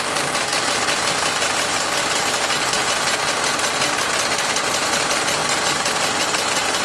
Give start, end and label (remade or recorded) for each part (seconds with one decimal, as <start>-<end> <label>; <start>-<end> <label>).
0.0-6.8 recorded